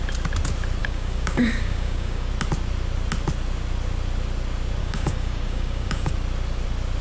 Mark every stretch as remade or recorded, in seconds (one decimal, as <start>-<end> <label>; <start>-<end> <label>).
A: 0.0-0.8 recorded; 0.8-2.3 remade; 2.3-4.8 recorded; 4.8-6.1 remade; 6.1-7.0 recorded